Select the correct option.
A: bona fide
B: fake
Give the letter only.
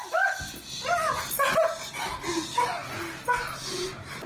A